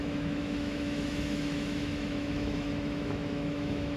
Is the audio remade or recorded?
remade